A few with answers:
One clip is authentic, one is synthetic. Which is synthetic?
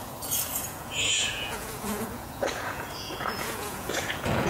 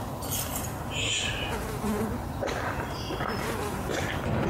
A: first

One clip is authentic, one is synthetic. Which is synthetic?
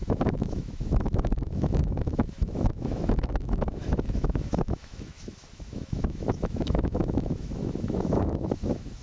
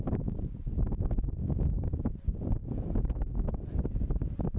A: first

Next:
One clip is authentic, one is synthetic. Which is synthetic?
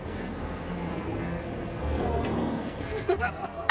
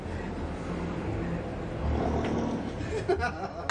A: first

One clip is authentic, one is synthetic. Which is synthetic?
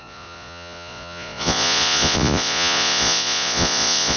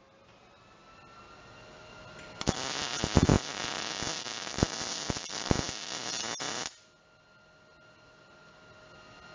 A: first